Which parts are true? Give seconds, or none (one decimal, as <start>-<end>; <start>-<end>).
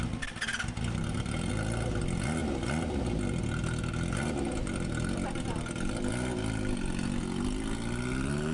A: 0.0-8.5